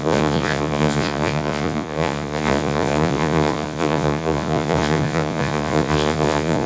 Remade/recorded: remade